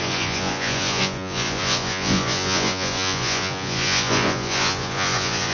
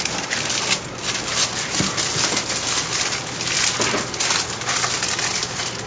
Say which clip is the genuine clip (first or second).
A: second